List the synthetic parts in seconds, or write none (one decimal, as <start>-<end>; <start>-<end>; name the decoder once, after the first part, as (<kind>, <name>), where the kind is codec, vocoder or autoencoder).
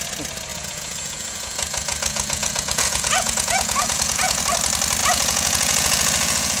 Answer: 0.5-4.4 (vocoder, Vocos); 5.0-6.6